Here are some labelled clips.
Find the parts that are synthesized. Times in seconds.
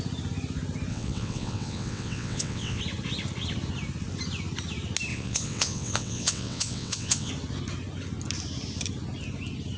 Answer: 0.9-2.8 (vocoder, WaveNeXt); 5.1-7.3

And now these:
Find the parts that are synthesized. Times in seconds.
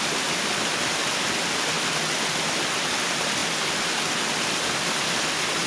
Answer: none